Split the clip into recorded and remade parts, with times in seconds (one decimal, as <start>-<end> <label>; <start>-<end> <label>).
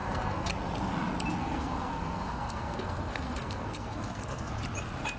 0.0-0.5 remade; 0.5-1.4 recorded; 1.4-4.5 remade; 4.5-5.2 recorded